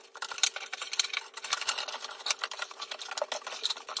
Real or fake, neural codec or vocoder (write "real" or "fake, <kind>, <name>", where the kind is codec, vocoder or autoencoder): real